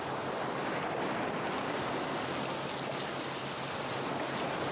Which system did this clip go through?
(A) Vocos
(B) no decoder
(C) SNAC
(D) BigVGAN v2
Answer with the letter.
B